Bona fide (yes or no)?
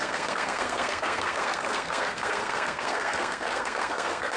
no